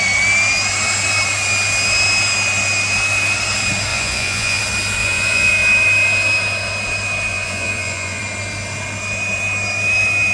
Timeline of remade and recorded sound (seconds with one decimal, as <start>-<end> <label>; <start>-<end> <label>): 0.0-3.9 recorded; 3.9-4.6 remade; 4.6-5.0 recorded; 5.0-5.5 remade; 5.5-7.3 recorded; 7.3-8.2 remade; 8.2-10.3 recorded